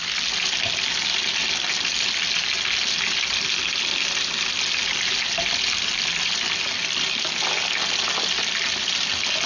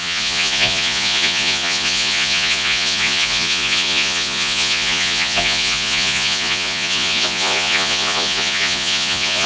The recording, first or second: first